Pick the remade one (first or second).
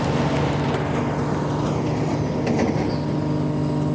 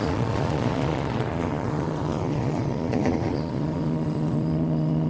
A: second